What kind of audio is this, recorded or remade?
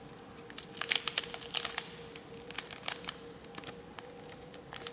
recorded